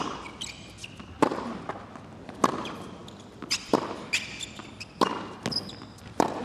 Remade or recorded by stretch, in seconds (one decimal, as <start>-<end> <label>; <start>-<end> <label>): 0.0-6.4 recorded